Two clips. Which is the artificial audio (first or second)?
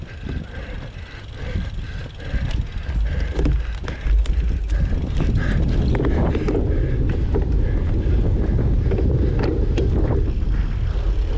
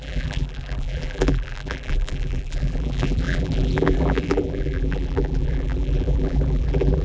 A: second